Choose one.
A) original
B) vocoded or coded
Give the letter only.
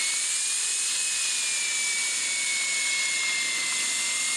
A